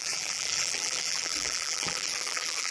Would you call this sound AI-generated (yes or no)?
yes